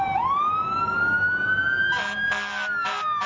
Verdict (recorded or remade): recorded